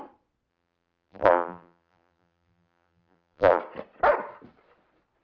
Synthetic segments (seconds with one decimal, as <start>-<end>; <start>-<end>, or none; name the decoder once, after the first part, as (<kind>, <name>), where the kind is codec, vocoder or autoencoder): 0.5-3.6 (vocoder, BigVGAN v2)